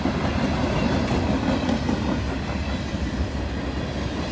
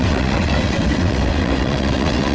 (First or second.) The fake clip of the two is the second